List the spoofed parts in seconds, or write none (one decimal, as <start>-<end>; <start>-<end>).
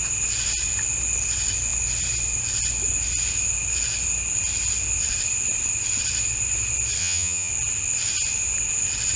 7.0-7.5